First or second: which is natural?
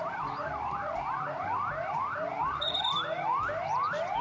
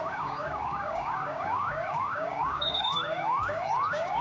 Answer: first